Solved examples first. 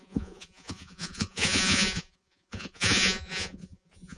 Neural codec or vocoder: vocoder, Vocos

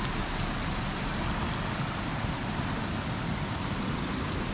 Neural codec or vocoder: none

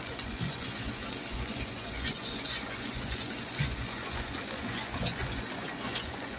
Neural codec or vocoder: vocoder, Vocos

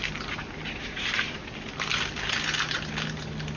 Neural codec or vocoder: none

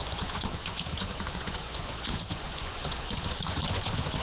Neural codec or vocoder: vocoder, Vocos